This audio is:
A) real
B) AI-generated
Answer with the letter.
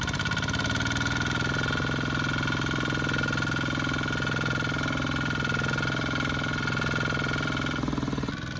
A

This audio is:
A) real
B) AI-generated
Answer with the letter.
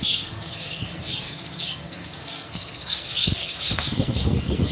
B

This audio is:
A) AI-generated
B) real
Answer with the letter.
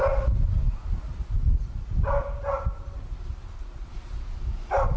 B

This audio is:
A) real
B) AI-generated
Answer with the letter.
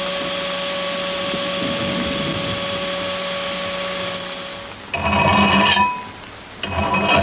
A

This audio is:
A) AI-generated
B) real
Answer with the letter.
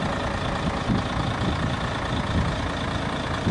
B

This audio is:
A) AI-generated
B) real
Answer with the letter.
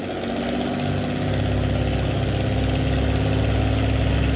B